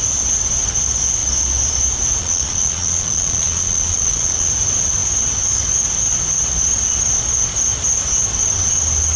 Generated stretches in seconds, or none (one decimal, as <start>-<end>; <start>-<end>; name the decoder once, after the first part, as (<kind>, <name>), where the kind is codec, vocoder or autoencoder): 2.2-4.5 (vocoder, Vocos)

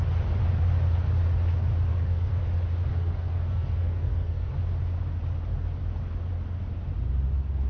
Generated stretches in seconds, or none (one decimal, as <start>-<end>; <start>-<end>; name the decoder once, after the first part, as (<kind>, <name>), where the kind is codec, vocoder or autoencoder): 1.9-2.4 (codec, SNAC); 2.9-4.5

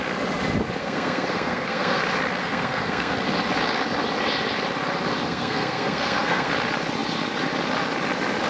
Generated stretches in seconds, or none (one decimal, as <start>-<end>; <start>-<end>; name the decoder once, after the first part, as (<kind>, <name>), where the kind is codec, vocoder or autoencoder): 0.8-2.0 (codec, SNAC); 2.4-3.1; 5.3-6.5

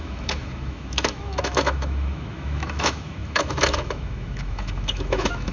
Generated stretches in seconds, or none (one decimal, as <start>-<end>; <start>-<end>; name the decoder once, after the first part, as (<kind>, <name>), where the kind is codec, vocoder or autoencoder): 0.0-5.5 (autoencoder, DAC-VAE)

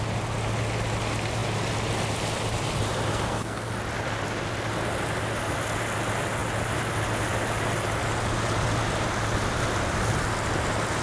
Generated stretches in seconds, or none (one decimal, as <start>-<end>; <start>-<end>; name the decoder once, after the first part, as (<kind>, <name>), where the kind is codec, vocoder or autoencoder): 3.1-3.7 (codec, SNAC)

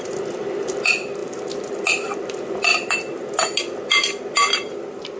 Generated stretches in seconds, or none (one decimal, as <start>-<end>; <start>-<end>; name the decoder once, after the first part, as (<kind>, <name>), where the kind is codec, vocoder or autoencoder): none

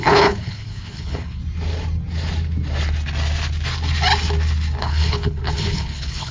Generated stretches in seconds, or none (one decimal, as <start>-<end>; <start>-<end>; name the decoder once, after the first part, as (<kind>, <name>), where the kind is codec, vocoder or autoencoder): 0.0-1.4 (codec, HILCodec); 4.8-6.3

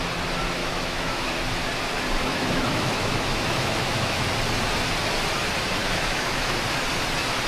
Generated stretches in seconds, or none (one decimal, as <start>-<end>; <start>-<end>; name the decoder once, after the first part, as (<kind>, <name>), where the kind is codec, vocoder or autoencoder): 0.6-1.3 (autoencoder, DAC-VAE); 2.2-4.3; 5.8-6.5